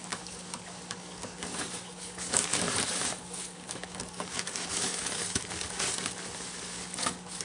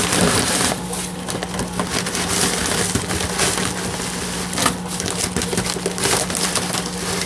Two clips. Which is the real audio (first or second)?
second